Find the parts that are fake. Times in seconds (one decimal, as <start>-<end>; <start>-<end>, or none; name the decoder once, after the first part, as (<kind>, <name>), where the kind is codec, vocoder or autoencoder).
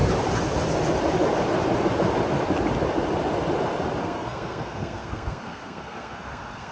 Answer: 4.0-6.7 (codec, SNAC)